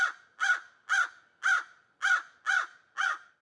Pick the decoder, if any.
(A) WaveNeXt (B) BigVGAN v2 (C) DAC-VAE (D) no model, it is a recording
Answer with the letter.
D